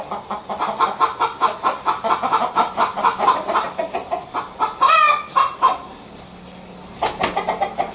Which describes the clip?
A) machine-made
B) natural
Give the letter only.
B